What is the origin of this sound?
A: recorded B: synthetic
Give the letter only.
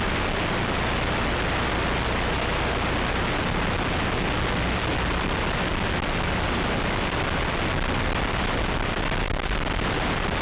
A